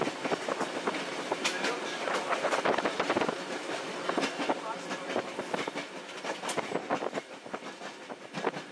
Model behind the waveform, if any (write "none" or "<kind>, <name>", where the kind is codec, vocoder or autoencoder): none